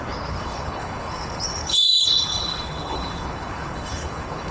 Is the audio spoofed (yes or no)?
yes